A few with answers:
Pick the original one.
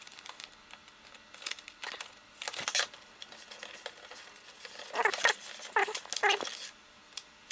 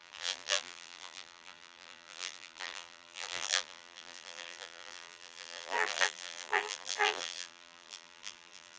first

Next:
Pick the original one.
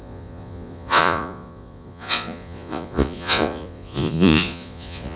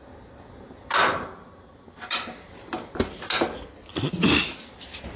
second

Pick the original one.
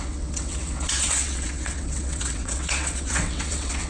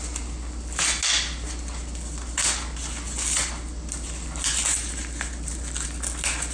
second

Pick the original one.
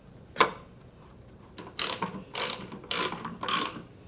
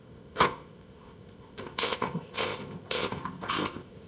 first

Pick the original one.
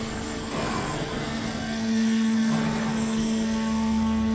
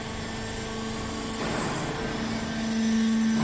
second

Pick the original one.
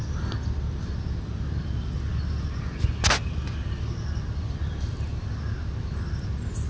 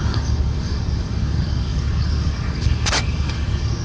first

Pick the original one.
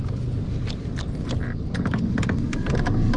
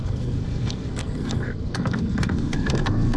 first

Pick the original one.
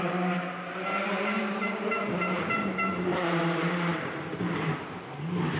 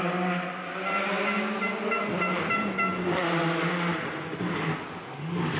second